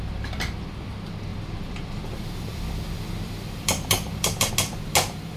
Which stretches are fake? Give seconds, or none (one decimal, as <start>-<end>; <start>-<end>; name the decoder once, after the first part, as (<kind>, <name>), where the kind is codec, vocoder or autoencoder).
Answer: 1.3-4.5 (vocoder, BigVGAN v2)

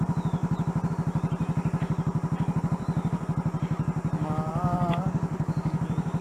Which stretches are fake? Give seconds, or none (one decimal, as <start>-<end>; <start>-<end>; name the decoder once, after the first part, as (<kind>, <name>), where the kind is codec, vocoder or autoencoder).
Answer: 4.5-5.8 (codec, DAC)

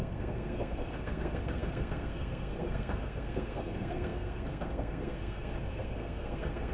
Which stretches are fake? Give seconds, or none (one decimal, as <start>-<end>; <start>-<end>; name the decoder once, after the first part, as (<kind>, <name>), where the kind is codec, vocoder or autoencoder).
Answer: 0.0-6.7 (codec, SNAC)

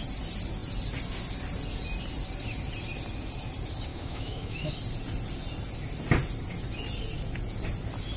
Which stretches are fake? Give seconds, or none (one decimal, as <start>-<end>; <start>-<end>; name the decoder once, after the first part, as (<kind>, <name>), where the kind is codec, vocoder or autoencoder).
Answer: 3.9-4.7 (autoencoder, DAC-VAE)

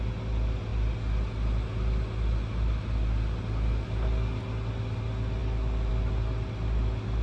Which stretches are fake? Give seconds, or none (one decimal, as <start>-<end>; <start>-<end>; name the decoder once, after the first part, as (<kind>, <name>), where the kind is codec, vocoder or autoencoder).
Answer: none

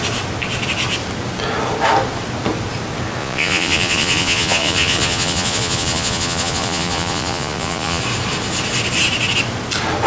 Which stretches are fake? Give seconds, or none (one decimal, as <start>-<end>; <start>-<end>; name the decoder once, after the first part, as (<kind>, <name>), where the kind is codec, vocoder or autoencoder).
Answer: 3.2-8.0 (vocoder, Vocos)